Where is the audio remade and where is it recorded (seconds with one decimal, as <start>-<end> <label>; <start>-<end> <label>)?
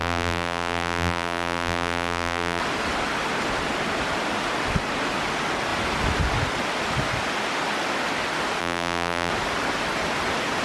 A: 0.0-2.6 remade; 2.6-8.6 recorded; 8.6-9.3 remade; 9.3-10.6 recorded